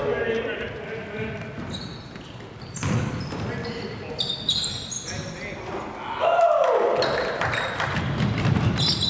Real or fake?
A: real